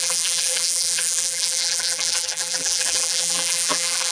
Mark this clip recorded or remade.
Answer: remade